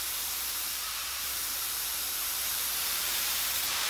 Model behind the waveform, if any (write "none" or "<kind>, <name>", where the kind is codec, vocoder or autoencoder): vocoder, BigVGAN v2